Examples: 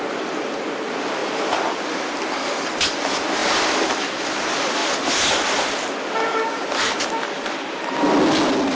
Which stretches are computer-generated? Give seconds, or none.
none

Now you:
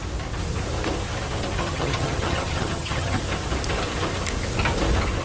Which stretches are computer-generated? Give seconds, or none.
1.6-3.2 (vocoder, HiFi-GAN)

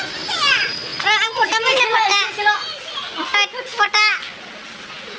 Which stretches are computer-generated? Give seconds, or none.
none

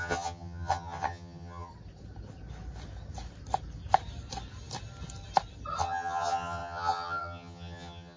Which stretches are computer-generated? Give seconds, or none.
0.0-1.7 (vocoder, HiFi-GAN); 5.8-8.2